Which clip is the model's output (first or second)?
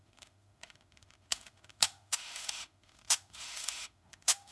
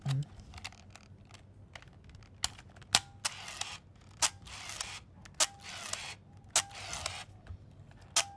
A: first